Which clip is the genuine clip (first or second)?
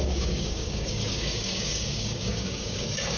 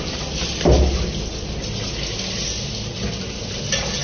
second